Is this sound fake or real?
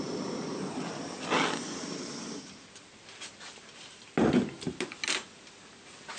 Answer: real